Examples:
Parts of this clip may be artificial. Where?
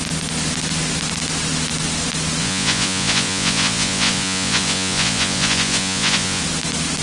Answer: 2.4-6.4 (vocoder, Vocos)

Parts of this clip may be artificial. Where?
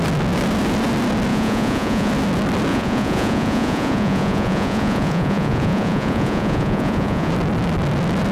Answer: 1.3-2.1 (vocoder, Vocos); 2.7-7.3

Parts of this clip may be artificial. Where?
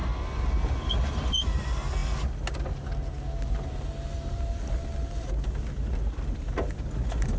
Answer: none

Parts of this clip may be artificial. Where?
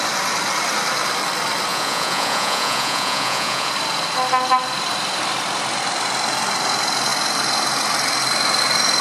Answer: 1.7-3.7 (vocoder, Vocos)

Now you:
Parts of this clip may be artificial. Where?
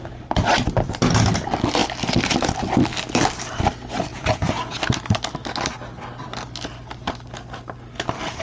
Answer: 4.1-4.8 (vocoder, Vocos)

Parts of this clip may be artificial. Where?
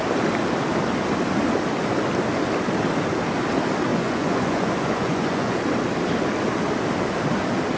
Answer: 3.9-5.6 (vocoder, Vocos)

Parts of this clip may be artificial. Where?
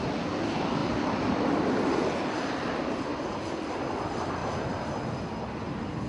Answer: none